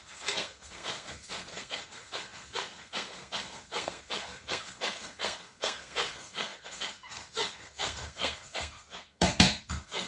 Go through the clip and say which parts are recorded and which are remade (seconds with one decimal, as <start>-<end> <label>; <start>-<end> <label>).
0.0-10.1 remade